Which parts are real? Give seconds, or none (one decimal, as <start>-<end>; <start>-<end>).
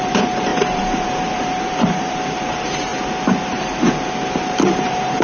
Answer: 2.9-4.5